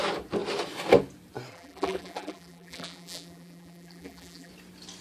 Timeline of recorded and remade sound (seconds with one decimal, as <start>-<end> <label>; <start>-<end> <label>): 0.0-1.5 recorded; 1.5-4.5 remade; 4.5-5.0 recorded